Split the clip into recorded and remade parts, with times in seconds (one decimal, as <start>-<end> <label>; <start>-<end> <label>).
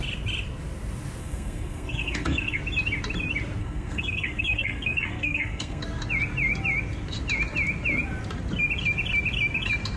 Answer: 0.0-1.2 recorded; 1.2-2.6 remade; 2.6-3.6 recorded; 3.6-5.8 remade; 5.8-10.0 recorded